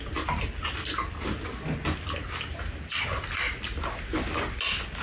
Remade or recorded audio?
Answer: recorded